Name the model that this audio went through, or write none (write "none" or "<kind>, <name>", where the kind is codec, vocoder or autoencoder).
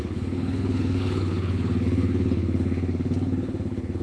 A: codec, HILCodec